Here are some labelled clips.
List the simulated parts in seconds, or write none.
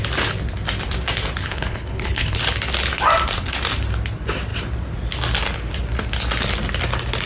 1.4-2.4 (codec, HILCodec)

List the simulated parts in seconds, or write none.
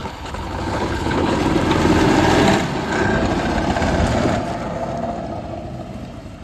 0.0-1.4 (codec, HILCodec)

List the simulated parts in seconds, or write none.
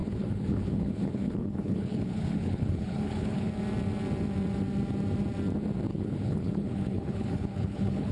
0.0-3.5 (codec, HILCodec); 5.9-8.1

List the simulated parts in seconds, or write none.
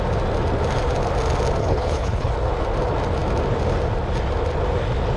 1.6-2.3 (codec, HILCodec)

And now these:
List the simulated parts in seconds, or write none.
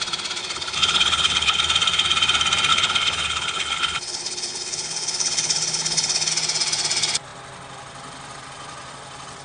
0.4-1.6 (codec, HILCodec); 2.7-6.3